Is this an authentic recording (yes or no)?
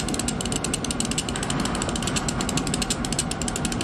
yes